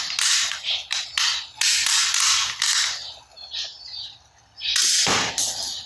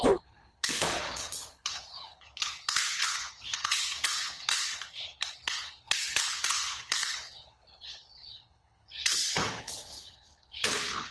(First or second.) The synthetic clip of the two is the second